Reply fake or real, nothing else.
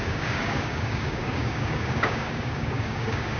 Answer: fake